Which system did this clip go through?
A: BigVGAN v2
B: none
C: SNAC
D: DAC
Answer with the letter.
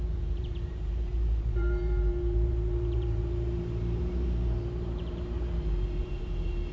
A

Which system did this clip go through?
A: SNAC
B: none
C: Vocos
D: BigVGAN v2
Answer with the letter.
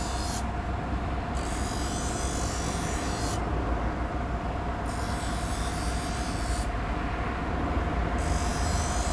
B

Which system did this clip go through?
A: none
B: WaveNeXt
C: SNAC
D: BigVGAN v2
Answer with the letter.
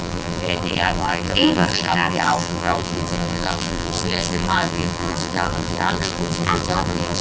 D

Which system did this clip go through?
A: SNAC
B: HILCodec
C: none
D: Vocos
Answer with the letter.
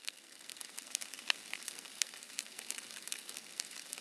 A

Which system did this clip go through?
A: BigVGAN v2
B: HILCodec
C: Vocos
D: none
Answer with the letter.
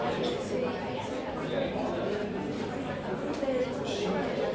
D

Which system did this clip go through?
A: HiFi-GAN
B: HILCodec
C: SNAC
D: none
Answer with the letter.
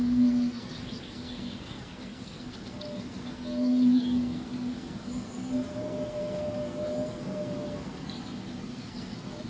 C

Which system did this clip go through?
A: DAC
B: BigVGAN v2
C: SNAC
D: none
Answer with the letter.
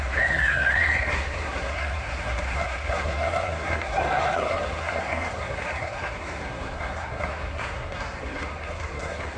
C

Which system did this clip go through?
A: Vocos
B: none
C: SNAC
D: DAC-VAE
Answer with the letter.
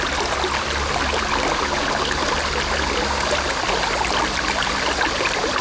B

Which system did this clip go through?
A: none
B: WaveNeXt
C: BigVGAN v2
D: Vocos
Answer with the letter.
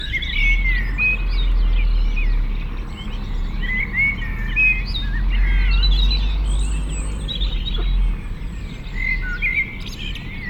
A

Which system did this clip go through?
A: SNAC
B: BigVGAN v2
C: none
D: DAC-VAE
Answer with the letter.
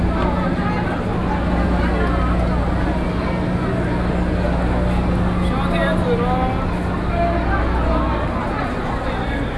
C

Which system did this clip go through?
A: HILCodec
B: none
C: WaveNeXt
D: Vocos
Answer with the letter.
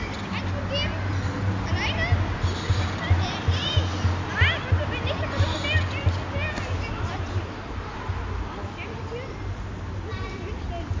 B